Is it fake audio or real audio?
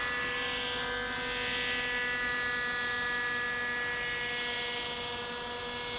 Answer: real